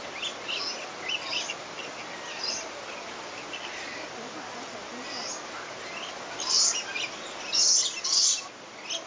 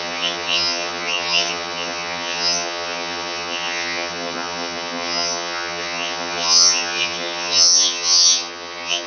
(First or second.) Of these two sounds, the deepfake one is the second